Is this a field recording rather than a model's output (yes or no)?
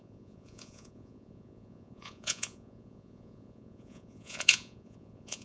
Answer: no